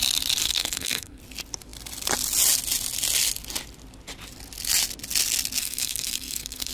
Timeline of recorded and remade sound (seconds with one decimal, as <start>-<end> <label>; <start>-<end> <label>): 0.0-0.4 recorded; 0.4-1.2 remade; 1.2-5.6 recorded; 5.6-6.7 remade